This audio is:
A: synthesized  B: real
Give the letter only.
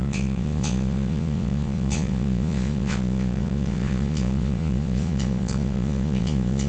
A